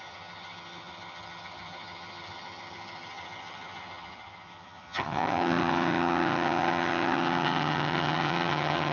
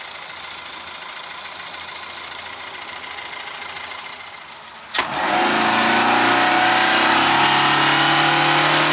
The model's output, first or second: first